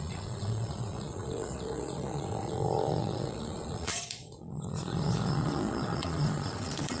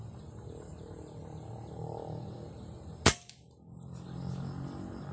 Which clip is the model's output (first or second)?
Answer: first